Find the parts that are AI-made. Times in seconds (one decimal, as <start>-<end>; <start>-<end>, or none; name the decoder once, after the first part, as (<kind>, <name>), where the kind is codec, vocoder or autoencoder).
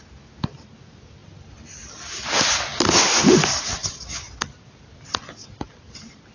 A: none